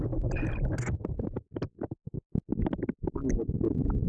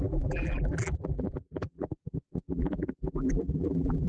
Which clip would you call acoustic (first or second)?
first